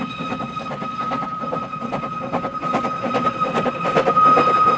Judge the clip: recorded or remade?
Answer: recorded